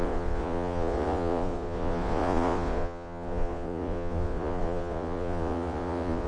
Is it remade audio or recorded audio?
remade